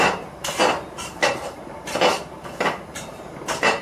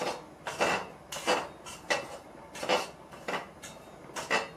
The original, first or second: second